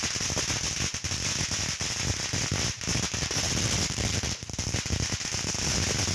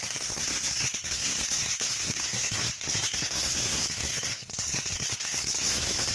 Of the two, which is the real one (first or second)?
first